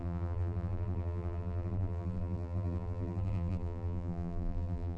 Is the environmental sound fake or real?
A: fake